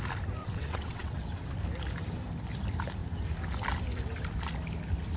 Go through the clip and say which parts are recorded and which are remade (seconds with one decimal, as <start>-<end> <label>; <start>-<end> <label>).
0.0-0.4 recorded; 0.4-1.2 remade; 1.2-5.2 recorded